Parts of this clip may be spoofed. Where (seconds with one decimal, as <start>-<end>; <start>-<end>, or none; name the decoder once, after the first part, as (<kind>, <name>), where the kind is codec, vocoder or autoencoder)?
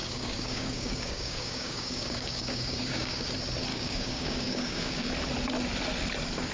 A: 0.0-3.3 (codec, DAC); 3.7-5.1